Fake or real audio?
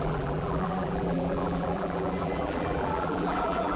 fake